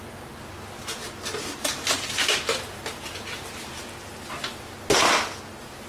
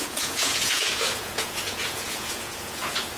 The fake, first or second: second